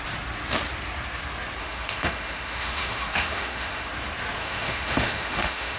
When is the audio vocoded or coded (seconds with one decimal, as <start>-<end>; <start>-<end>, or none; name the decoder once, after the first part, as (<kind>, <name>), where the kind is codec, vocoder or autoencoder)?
1.6-3.9 (autoencoder, DAC-VAE); 4.4-5.8